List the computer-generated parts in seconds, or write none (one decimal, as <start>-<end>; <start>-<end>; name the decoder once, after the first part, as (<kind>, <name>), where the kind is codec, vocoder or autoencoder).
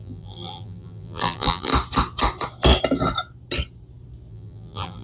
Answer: 0.0-1.7 (vocoder, BigVGAN v2); 4.3-5.0